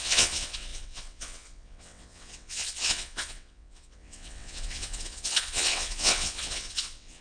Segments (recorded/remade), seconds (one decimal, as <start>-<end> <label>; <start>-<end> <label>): 0.0-7.2 remade